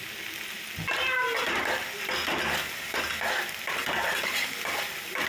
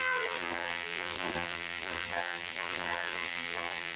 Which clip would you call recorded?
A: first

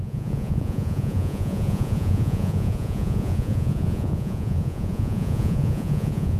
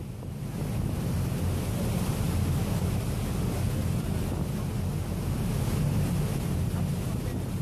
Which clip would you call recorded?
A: second